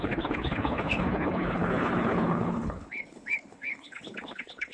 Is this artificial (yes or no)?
yes